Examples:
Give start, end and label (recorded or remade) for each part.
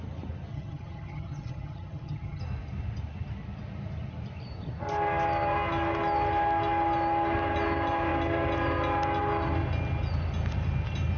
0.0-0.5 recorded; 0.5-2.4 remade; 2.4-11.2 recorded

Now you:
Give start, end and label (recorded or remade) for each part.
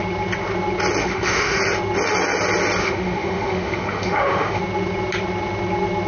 0.0-1.0 recorded; 1.0-1.6 remade; 1.6-2.8 recorded; 2.8-4.6 remade; 4.6-6.1 recorded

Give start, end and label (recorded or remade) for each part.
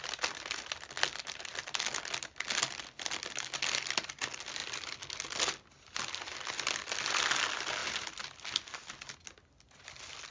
0.0-10.3 recorded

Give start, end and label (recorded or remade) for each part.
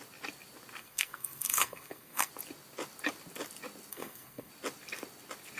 0.0-0.8 recorded; 0.8-2.3 remade; 2.3-3.9 recorded; 3.9-4.5 remade; 4.5-5.6 recorded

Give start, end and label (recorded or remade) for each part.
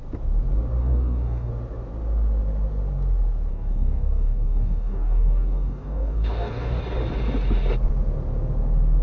0.0-0.8 recorded; 0.8-1.5 remade; 1.5-3.5 recorded; 3.5-6.8 remade; 6.8-9.0 recorded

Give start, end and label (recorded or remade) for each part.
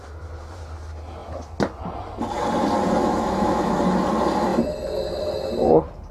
0.0-3.0 recorded; 3.0-3.8 remade; 3.8-6.1 recorded